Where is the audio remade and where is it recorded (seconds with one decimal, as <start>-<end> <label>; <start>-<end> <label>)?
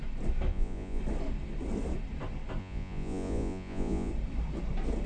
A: 0.0-0.5 recorded; 0.5-1.0 remade; 1.0-2.6 recorded; 2.6-4.1 remade; 4.1-5.1 recorded